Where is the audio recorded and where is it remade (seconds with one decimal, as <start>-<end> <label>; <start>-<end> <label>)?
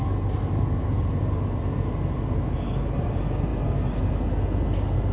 0.0-5.1 recorded